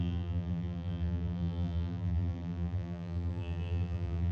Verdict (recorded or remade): remade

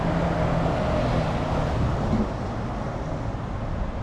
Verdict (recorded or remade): recorded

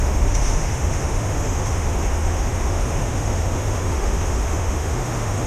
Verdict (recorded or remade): remade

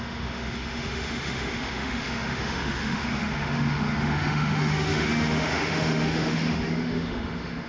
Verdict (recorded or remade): remade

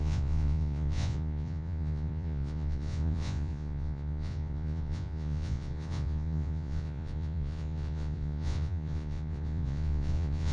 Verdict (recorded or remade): remade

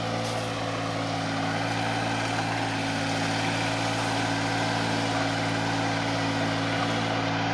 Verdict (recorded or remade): recorded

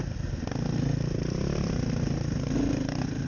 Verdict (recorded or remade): recorded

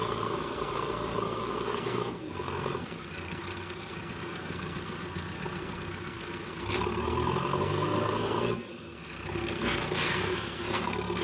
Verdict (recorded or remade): remade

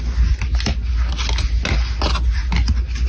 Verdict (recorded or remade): recorded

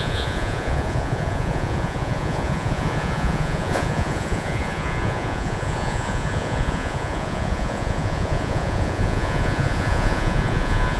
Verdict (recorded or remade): remade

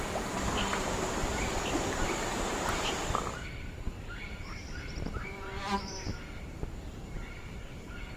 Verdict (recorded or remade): remade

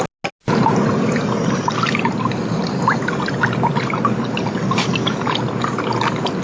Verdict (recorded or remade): recorded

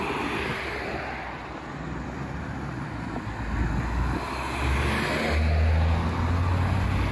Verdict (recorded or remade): recorded